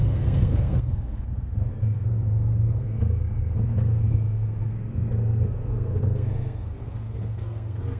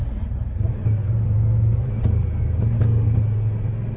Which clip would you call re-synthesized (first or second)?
first